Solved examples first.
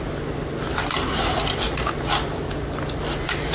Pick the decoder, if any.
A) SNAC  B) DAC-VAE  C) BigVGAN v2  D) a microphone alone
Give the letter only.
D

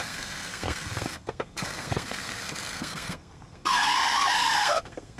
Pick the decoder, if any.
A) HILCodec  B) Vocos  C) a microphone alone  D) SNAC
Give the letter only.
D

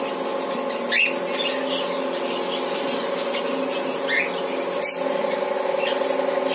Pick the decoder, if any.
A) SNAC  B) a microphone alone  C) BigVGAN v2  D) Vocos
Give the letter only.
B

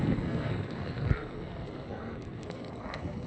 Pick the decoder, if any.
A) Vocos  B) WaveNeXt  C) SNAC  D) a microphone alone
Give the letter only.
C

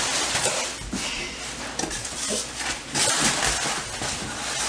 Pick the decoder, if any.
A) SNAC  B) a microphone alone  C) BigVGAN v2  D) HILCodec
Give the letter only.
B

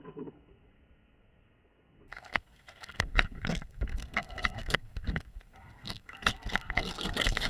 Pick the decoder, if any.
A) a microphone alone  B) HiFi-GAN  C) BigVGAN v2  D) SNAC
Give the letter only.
D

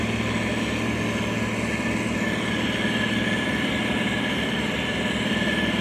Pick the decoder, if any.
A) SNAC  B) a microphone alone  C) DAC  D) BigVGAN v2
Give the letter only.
B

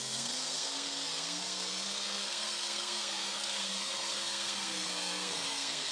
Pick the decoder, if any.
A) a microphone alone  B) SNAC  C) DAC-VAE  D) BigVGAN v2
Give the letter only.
B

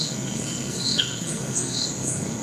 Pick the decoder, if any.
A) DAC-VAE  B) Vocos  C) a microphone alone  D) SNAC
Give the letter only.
D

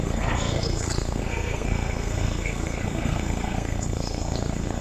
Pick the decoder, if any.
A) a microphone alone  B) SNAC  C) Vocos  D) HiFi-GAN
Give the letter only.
B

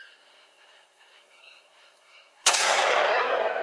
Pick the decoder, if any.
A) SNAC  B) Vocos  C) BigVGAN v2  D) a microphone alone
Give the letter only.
A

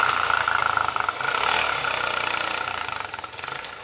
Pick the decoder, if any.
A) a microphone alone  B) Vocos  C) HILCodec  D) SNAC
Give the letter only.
A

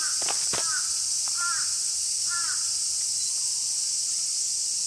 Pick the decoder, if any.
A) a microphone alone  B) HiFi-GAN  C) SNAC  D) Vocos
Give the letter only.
A